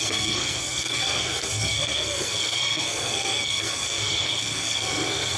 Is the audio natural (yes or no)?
no